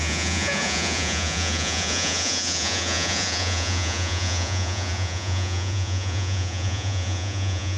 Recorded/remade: remade